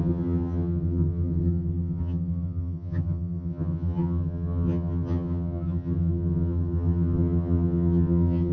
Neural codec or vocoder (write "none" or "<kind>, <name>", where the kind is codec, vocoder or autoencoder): vocoder, HiFi-GAN